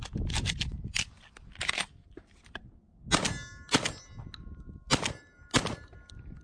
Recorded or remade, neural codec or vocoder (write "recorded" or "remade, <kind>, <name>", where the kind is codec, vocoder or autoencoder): recorded